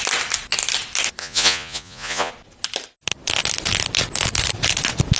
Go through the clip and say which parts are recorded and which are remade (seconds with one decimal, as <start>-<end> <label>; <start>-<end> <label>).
0.0-1.2 recorded; 1.2-2.3 remade; 2.3-5.2 recorded

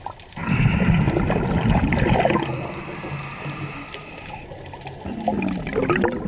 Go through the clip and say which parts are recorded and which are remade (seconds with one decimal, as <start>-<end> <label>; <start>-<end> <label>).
0.0-6.3 recorded

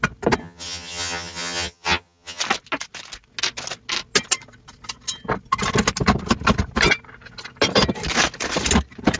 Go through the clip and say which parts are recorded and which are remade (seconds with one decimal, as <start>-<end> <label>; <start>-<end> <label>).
0.0-0.4 recorded; 0.4-2.4 remade; 2.4-9.2 recorded

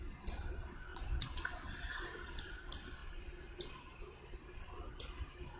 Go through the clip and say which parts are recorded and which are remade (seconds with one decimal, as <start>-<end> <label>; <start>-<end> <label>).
0.0-0.9 recorded; 0.9-1.5 remade; 1.5-5.6 recorded

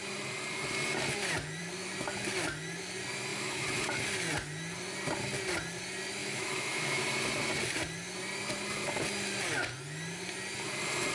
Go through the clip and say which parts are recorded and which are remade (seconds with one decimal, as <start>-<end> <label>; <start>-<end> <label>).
0.0-3.3 recorded; 3.3-4.0 remade; 4.0-6.2 recorded; 6.2-7.0 remade; 7.0-11.1 recorded

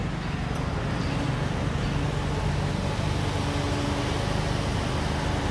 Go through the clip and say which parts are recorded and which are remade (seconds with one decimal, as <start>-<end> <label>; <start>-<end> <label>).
0.0-5.5 recorded